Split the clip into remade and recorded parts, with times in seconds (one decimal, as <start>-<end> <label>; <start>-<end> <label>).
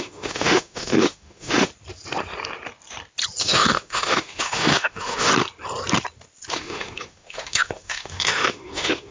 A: 0.0-1.7 remade; 1.7-3.4 recorded; 3.4-5.3 remade; 5.3-6.5 recorded; 6.5-9.1 remade